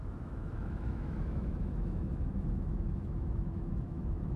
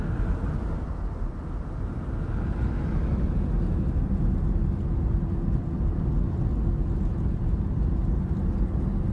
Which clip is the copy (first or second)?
first